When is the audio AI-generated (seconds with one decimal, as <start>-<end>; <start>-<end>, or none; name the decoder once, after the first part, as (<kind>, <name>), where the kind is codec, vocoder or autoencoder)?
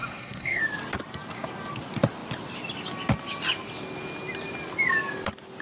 0.0-0.6 (codec, SNAC)